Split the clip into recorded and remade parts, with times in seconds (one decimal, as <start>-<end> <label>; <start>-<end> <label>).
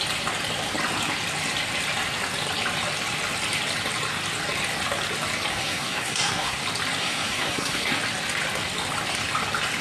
0.0-5.5 recorded; 5.5-6.6 remade; 6.6-7.0 recorded; 7.0-7.9 remade; 7.9-9.8 recorded